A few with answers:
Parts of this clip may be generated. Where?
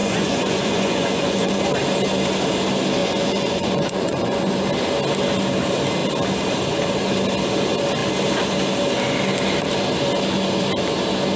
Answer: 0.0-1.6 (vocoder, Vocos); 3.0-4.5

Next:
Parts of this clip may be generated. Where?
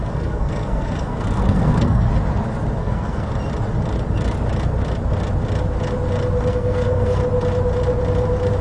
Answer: 0.0-2.1 (codec, SNAC); 2.8-3.3; 6.5-7.2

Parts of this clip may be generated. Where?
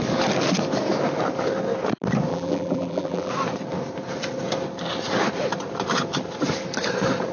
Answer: 2.3-3.3 (vocoder, BigVGAN v2)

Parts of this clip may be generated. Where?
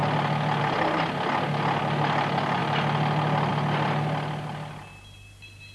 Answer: none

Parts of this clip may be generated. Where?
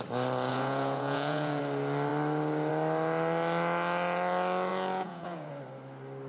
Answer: 0.5-1.6 (vocoder, Vocos); 4.7-5.5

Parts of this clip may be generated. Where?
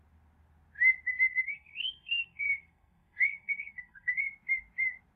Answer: 1.3-4.3 (codec, SNAC)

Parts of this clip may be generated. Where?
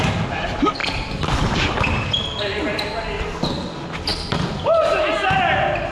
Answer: none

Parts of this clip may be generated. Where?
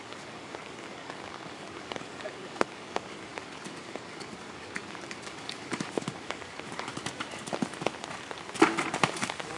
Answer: 0.0-6.9 (codec, DAC); 9.0-9.6